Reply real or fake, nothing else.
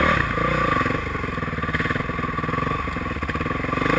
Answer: real